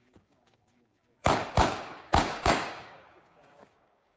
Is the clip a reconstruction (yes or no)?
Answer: yes